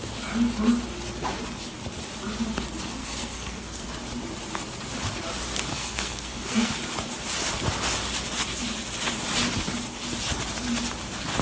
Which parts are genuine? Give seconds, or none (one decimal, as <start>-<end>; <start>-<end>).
0.0-3.0; 3.9-5.7; 6.8-11.4